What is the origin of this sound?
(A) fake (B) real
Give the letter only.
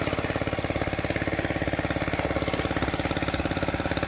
B